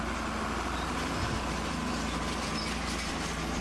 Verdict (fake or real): real